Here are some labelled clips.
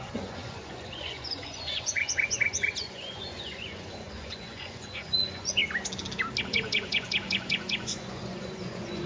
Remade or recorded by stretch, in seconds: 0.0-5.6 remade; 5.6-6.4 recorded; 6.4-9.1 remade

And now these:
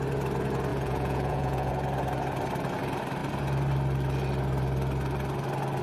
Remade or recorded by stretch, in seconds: 0.0-0.7 recorded; 0.7-1.7 remade; 1.7-5.8 recorded

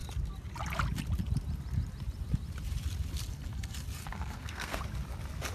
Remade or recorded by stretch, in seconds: 0.0-4.0 recorded; 4.0-4.8 remade; 4.8-5.5 recorded

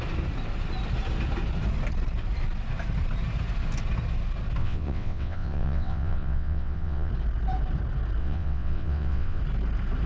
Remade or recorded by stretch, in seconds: 0.0-4.6 recorded; 4.6-7.1 remade; 7.1-8.2 recorded; 8.2-9.4 remade; 9.4-10.1 recorded

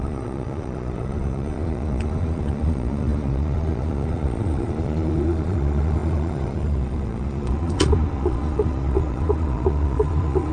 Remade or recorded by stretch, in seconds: 0.0-10.5 remade

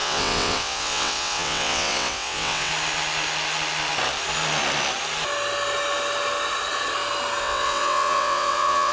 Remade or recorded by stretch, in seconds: 0.0-2.7 remade; 2.7-7.4 recorded; 7.4-8.9 remade

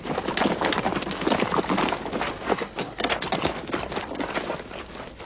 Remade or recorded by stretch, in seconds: 0.0-2.5 recorded; 2.5-3.1 remade; 3.1-5.3 recorded

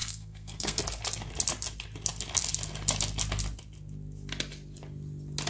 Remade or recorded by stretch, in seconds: 0.0-0.8 remade; 0.8-5.5 recorded